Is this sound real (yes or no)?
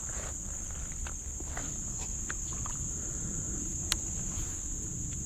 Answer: yes